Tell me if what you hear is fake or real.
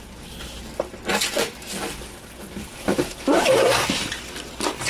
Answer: real